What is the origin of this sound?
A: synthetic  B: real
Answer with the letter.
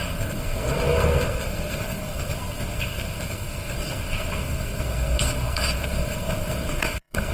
A